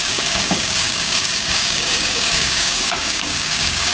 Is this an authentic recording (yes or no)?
no